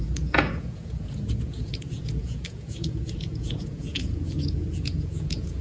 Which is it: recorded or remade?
remade